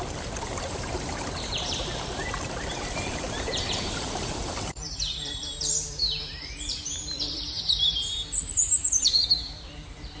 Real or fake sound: fake